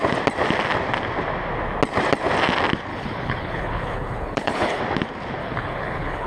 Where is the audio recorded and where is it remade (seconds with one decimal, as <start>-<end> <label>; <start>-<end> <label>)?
0.0-2.9 recorded; 2.9-4.8 remade; 4.8-5.4 recorded; 5.4-6.3 remade